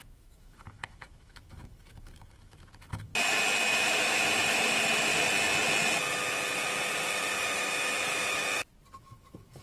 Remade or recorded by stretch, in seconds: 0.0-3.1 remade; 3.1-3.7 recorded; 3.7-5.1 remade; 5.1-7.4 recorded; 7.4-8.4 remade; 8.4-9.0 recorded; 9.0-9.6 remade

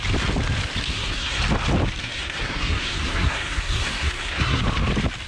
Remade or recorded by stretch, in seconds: 0.0-0.9 recorded; 0.9-1.4 remade; 1.4-2.0 recorded; 2.0-4.6 remade; 4.6-5.3 recorded

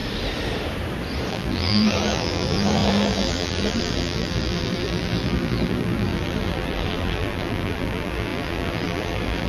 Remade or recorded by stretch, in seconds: 0.0-1.3 recorded; 1.3-9.5 remade

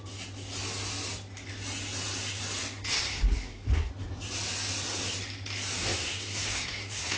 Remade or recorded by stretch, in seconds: 0.0-2.9 recorded; 2.9-3.9 remade; 3.9-5.8 recorded; 5.8-7.2 remade

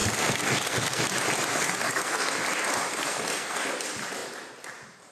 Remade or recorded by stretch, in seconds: 0.0-1.0 remade; 1.0-1.5 recorded; 1.5-2.4 remade; 2.4-2.9 recorded; 2.9-3.6 remade; 3.6-5.1 recorded

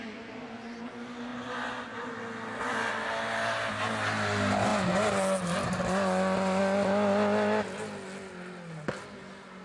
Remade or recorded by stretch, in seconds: 0.0-9.6 recorded

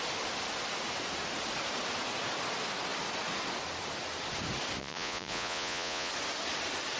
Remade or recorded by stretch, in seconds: 0.0-4.8 recorded; 4.8-6.1 remade; 6.1-7.0 recorded